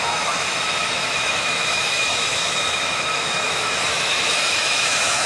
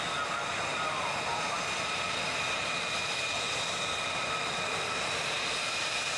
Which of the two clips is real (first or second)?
second